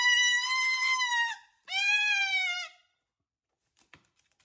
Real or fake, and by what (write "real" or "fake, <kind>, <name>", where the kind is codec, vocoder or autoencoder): fake, vocoder, BigVGAN v2